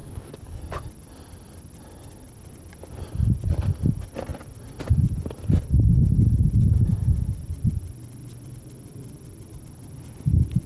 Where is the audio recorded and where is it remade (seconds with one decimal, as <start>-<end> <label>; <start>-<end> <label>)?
0.0-0.6 remade; 0.6-10.7 recorded